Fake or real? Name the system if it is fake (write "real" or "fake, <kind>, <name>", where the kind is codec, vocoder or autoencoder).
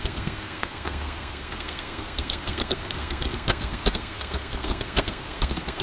fake, codec, SNAC